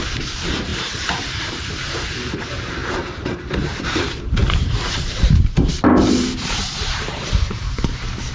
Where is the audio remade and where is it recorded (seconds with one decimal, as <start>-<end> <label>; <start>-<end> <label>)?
0.0-8.3 remade